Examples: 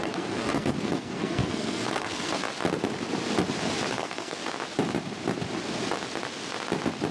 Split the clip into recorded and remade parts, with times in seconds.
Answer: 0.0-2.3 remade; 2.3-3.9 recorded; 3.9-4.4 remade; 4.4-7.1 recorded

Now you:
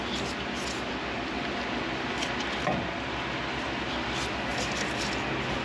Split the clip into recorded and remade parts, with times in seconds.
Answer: 0.0-4.5 recorded; 4.5-5.1 remade; 5.1-5.6 recorded